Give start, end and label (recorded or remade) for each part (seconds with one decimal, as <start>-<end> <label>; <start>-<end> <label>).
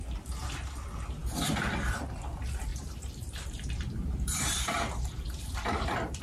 0.0-2.7 recorded; 2.7-6.2 remade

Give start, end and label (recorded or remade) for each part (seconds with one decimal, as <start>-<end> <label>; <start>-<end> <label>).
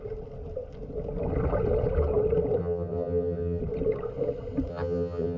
0.0-2.6 recorded; 2.6-3.6 remade; 3.6-4.7 recorded; 4.7-5.4 remade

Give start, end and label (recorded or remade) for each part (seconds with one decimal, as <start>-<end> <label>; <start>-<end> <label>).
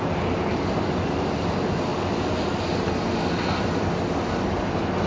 0.0-5.1 recorded